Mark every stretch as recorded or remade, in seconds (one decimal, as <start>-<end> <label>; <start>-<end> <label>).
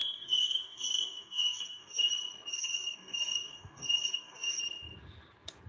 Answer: 0.0-2.1 remade; 2.1-2.5 recorded; 2.5-4.6 remade; 4.6-5.7 recorded